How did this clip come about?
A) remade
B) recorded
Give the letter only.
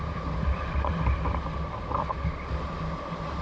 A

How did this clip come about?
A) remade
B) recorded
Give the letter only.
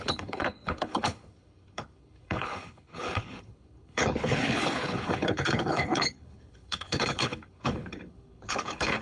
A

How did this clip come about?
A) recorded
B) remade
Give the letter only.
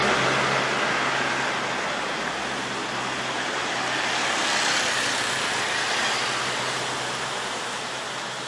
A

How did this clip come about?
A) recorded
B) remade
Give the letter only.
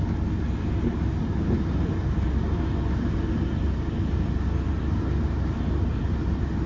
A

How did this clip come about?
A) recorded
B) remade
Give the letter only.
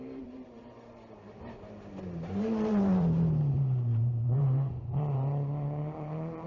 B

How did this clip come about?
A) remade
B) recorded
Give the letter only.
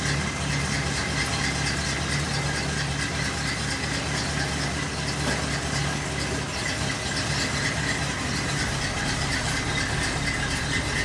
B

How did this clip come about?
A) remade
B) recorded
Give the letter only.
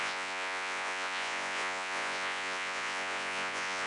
A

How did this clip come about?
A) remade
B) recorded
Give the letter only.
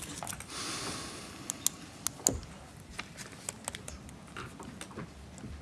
B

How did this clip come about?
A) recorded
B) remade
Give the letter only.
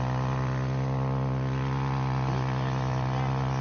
A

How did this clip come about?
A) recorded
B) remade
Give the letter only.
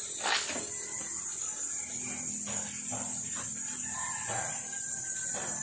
A